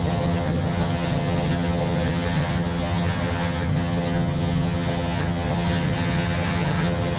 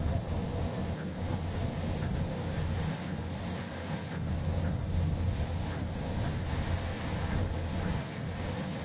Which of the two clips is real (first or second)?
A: second